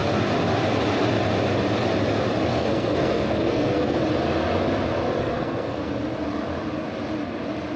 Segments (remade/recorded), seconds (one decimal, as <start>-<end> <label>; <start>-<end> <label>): 0.0-2.5 recorded; 2.5-4.0 remade; 4.0-5.2 recorded; 5.2-5.9 remade; 5.9-7.8 recorded